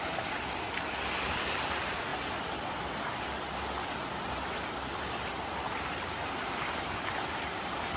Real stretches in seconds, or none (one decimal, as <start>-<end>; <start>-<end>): 2.1-5.3